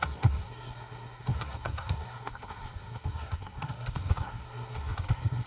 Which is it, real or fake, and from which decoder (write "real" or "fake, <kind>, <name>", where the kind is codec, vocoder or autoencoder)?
fake, codec, SNAC